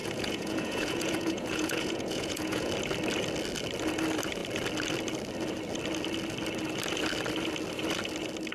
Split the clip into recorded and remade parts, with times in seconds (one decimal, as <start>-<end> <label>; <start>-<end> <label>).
0.0-2.7 remade; 2.7-8.5 recorded